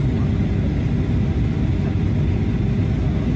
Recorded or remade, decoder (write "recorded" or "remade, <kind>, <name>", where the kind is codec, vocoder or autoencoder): recorded